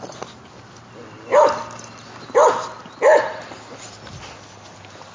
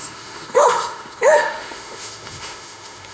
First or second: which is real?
first